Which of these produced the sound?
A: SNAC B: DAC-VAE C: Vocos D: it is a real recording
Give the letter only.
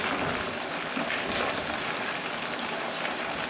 D